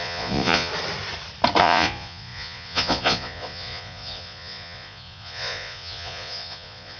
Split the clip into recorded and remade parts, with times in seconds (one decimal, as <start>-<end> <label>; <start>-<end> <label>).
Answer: 0.0-0.7 remade; 0.7-1.6 recorded; 1.6-7.0 remade